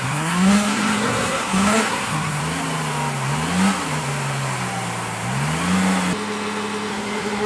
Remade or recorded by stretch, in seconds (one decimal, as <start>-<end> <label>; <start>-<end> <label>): 0.0-2.4 remade; 2.4-6.9 recorded; 6.9-7.5 remade